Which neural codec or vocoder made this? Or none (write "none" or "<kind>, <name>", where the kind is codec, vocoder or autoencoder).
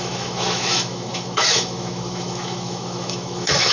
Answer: autoencoder, DAC-VAE